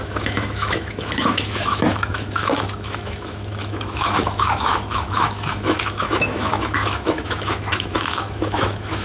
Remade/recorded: remade